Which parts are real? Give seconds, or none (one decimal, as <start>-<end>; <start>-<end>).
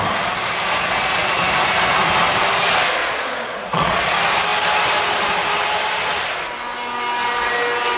0.0-3.0; 4.1-8.0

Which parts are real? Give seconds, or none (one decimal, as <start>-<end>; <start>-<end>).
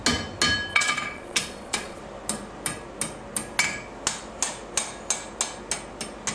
0.0-0.7; 2.0-6.3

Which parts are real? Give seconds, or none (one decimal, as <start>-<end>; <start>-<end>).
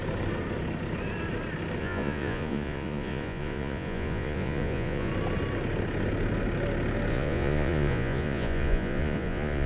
0.0-1.8; 5.1-7.1